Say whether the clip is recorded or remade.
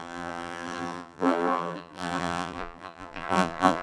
remade